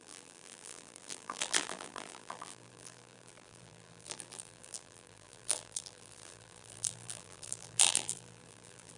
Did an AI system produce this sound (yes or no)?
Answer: yes